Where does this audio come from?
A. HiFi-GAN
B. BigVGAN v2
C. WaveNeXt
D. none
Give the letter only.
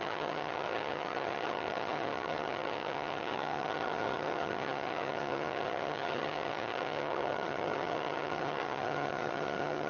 A